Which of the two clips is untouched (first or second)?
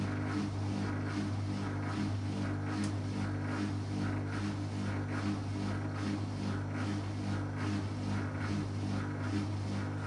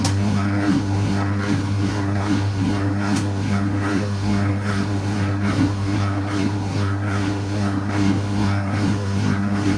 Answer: first